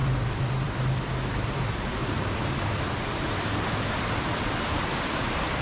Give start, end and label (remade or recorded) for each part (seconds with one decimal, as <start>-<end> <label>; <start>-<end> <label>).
0.0-1.6 remade; 1.6-2.0 recorded; 2.0-5.6 remade